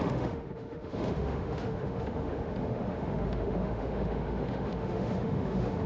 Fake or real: fake